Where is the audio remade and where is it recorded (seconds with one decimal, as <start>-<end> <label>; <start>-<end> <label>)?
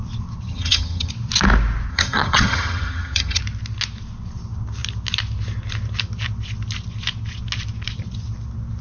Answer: 0.0-0.5 recorded; 0.5-1.1 remade; 1.1-1.9 recorded; 1.9-3.4 remade; 3.4-8.8 recorded